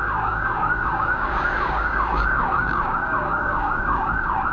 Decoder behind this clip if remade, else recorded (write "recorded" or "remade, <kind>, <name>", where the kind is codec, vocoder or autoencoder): remade, codec, DAC